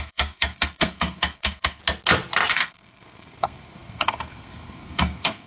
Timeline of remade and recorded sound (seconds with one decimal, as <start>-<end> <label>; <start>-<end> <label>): 0.0-1.8 remade; 1.8-2.5 recorded; 2.5-5.5 remade